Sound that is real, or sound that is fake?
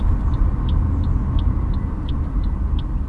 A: real